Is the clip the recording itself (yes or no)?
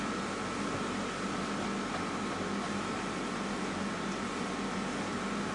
yes